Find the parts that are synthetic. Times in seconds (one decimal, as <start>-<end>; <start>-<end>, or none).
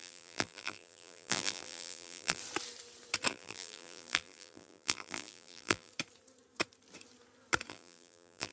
0.0-2.4; 3.3-5.9; 7.7-8.5